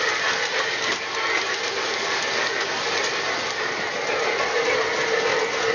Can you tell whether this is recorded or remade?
recorded